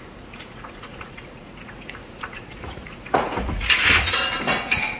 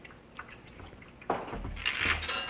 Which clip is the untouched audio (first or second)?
second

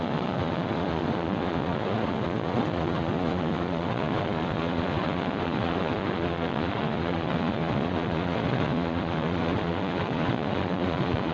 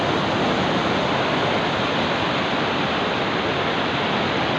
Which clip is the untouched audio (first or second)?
second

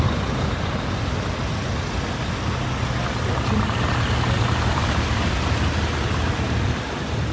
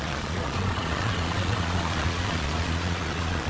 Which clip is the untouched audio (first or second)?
first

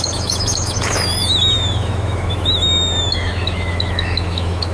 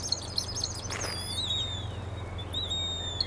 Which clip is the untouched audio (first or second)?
second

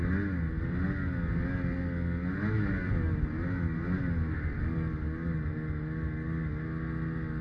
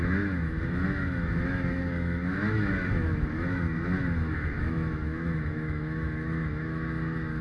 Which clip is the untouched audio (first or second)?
first